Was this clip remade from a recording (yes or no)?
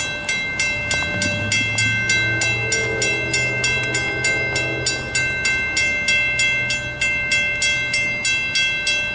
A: no